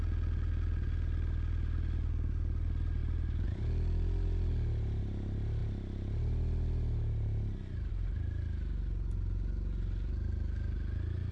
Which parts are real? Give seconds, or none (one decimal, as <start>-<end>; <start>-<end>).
0.0-11.3

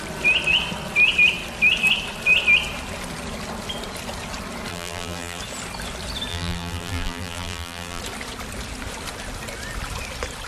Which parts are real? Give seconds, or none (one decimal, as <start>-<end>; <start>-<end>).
0.0-4.7; 5.4-6.3; 8.0-10.5

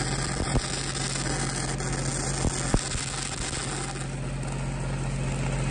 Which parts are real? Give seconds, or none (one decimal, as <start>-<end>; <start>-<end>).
0.0-5.7